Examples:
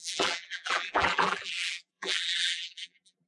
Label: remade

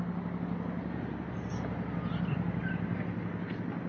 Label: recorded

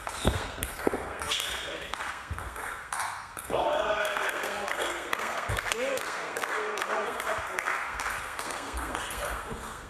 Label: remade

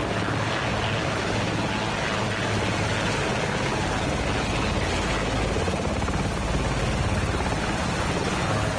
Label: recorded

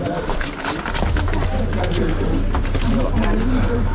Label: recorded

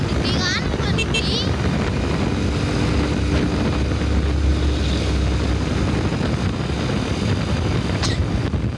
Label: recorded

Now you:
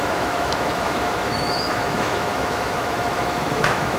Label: remade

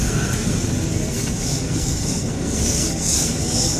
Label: remade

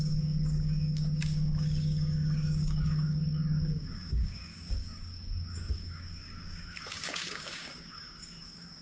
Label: remade